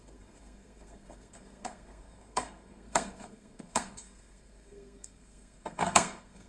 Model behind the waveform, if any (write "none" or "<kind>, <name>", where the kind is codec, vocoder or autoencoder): codec, SNAC